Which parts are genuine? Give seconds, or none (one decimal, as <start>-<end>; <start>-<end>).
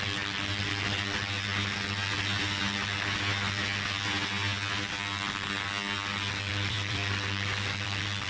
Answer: 0.0-6.5